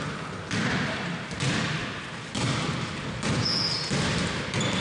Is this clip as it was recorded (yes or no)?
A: yes